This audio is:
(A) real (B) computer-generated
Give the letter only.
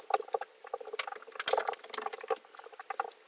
A